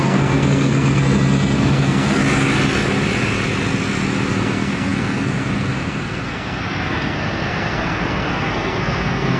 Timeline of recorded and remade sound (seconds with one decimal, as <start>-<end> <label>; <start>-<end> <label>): 0.0-2.2 remade; 2.2-4.3 recorded; 4.3-9.4 remade